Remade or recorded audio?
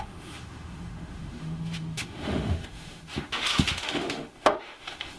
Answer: remade